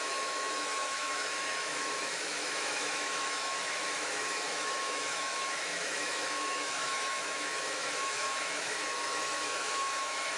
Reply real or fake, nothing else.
fake